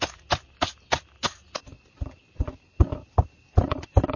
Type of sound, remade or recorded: recorded